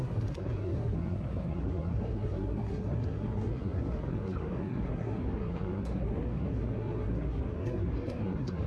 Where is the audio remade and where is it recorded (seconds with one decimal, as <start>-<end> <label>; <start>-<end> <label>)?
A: 0.0-8.7 remade